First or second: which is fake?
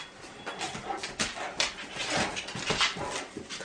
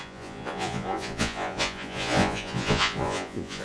second